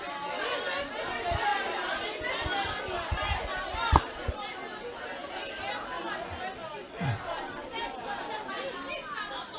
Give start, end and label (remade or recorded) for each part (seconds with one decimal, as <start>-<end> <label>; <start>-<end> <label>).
0.0-1.5 recorded; 1.5-2.3 remade; 2.3-9.6 recorded